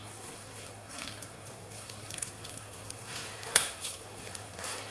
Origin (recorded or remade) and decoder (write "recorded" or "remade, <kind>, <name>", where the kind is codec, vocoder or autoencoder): remade, codec, SNAC